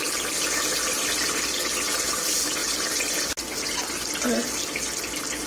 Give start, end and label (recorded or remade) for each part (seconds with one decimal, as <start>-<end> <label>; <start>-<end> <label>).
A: 0.0-5.5 recorded